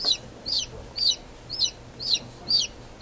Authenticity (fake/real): real